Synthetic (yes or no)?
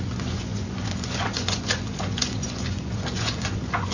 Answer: yes